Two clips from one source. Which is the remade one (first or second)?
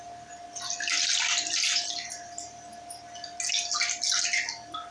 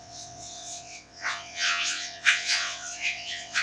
second